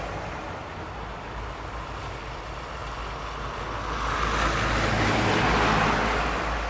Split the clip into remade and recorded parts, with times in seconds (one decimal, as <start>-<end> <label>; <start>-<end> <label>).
0.0-6.7 recorded